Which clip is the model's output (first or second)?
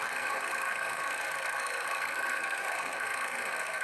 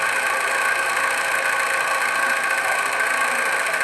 first